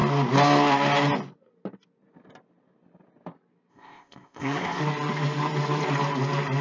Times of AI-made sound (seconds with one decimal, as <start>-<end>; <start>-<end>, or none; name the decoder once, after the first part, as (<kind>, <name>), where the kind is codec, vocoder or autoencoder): 3.7-4.8 (codec, ZipCodec)